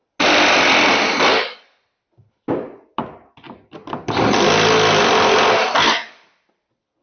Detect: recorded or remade recorded